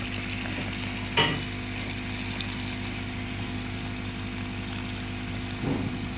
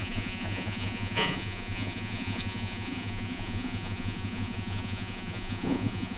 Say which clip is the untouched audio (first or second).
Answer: first